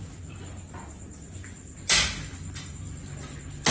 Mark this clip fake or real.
real